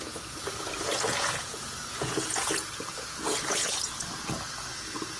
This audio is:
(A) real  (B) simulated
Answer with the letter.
B